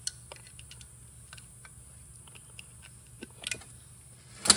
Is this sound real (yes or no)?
yes